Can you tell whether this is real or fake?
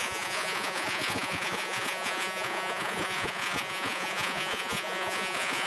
fake